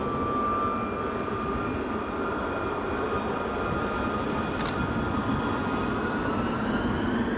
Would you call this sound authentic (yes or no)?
yes